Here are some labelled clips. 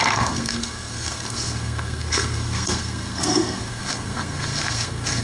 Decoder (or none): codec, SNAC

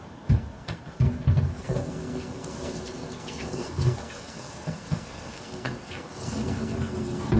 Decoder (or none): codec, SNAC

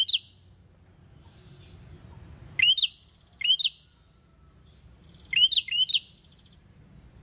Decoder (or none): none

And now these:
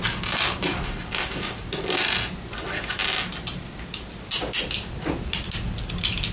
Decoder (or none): none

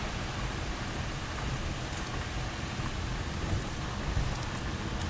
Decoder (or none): none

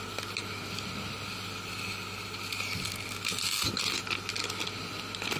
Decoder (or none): none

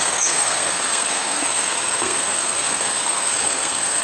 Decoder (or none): codec, SNAC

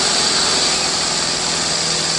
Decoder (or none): none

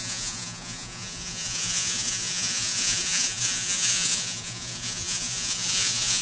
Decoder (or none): vocoder, Vocos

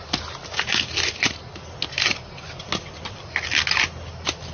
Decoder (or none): none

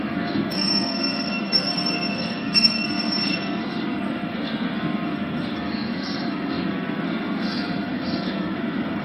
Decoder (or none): codec, SNAC